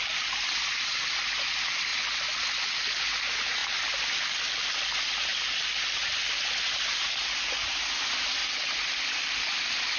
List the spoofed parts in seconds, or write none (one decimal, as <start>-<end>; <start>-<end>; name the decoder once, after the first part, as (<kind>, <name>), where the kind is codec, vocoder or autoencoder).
none